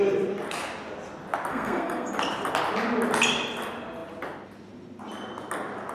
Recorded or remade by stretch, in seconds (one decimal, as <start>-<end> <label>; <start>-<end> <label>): 0.0-1.5 recorded; 1.5-2.1 remade; 2.1-5.9 recorded